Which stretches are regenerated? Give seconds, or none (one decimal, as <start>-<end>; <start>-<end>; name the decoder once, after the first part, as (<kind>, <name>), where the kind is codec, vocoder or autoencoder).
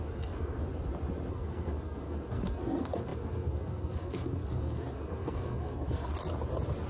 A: 0.0-0.6 (codec, SNAC); 1.3-6.1